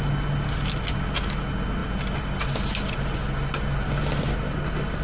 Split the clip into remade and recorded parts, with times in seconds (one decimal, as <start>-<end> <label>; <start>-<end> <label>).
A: 0.0-5.0 recorded